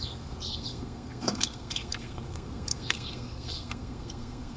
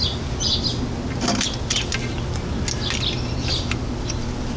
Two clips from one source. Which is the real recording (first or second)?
second